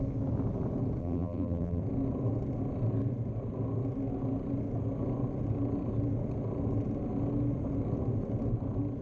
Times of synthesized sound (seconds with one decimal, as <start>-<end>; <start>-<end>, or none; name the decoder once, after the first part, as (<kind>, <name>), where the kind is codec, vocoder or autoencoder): 1.0-1.8 (vocoder, BigVGAN v2)